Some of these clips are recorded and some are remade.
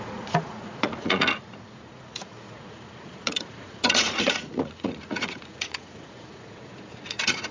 remade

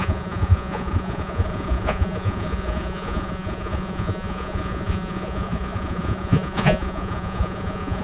remade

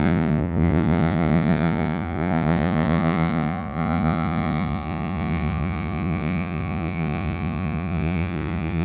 remade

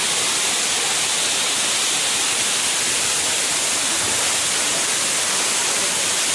recorded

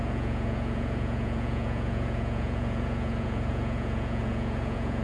remade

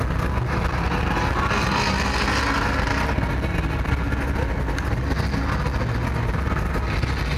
recorded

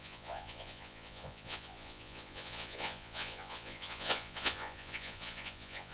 remade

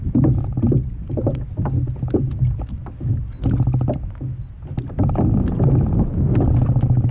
recorded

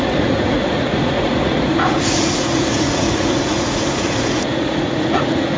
remade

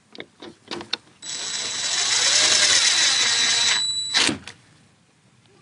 recorded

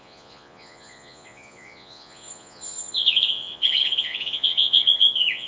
remade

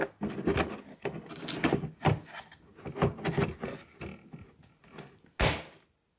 recorded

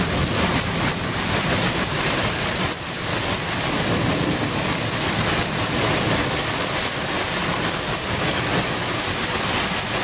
recorded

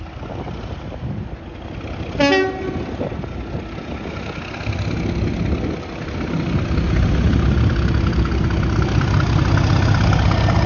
recorded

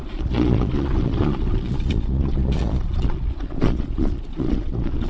remade